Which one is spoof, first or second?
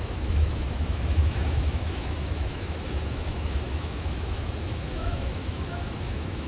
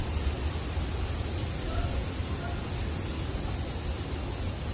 first